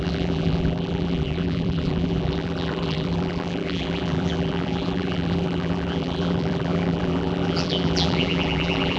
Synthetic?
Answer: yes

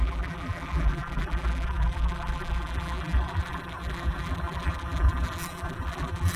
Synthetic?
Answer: yes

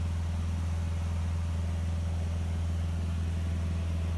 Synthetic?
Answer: no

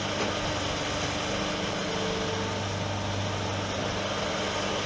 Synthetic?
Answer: no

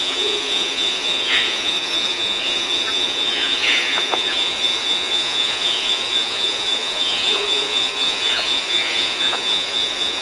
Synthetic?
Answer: yes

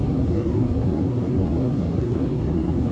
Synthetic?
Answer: yes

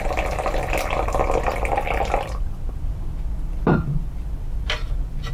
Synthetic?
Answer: yes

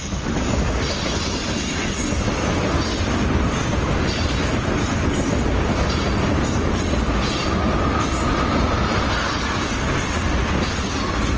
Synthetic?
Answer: no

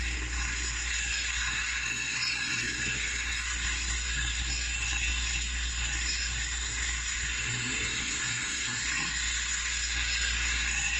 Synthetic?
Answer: yes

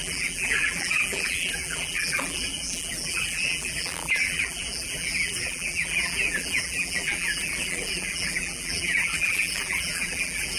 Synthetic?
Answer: yes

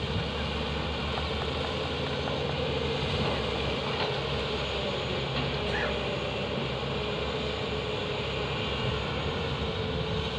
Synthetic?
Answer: no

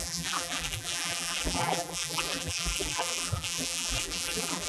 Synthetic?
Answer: yes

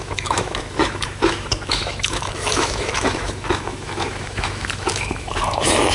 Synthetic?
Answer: yes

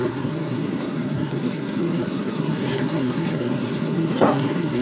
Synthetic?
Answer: yes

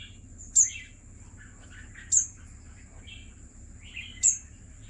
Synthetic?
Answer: no